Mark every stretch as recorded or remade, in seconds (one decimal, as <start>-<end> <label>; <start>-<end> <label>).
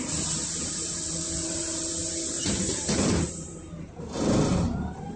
0.0-5.2 remade